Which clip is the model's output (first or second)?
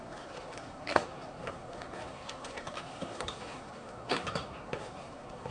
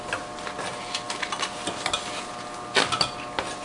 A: first